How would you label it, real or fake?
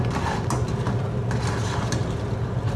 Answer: real